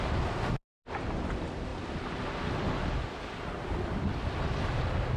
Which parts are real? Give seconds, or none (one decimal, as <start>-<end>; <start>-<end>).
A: 0.0-5.2